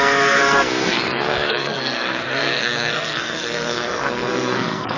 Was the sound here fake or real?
fake